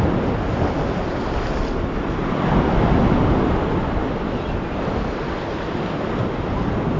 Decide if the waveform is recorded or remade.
recorded